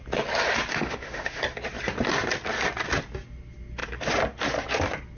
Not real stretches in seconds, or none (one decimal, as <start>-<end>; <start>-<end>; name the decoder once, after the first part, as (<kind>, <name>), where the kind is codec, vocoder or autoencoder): 0.7-1.4 (autoencoder, DAC-VAE)